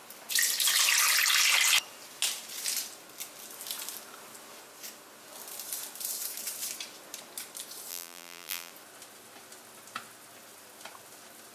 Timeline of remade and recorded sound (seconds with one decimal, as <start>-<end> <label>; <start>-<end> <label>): 0.0-7.9 recorded; 7.9-8.7 remade; 8.7-11.5 recorded